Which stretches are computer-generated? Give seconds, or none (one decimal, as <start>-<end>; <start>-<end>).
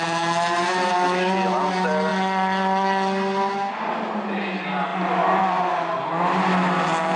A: none